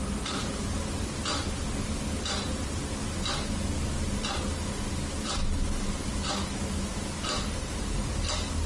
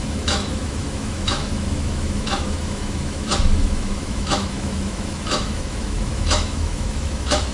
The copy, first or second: second